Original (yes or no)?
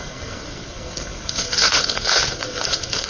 no